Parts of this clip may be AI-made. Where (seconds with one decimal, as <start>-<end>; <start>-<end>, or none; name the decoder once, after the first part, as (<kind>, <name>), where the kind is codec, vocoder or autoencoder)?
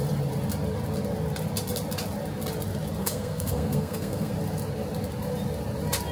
3.0-4.3 (codec, SNAC)